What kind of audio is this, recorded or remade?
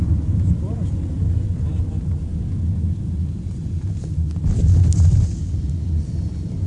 recorded